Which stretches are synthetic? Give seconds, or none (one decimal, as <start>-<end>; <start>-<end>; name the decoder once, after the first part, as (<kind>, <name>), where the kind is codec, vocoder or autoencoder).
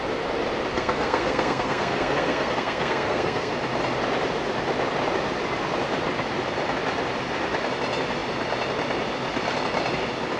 0.7-3.5 (codec, SNAC)